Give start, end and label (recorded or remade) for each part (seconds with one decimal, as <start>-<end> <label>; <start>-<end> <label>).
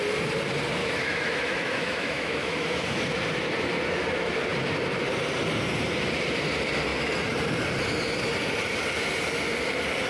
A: 0.0-0.8 recorded; 0.8-3.0 remade; 3.0-10.1 recorded